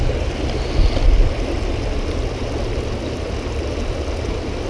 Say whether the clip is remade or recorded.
recorded